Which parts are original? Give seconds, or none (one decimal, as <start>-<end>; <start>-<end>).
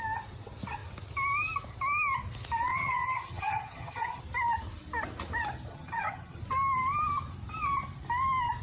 0.0-2.7; 4.2-5.7; 6.4-8.6